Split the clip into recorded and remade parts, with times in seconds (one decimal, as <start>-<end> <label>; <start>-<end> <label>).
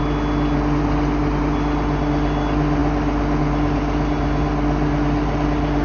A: 0.0-5.8 recorded